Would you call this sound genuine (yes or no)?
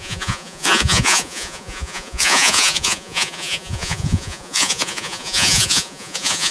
no